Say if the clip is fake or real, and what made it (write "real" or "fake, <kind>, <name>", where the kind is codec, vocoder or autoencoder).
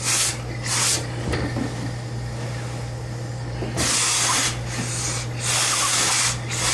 real